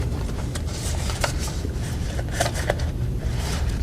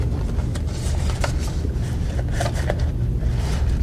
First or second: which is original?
second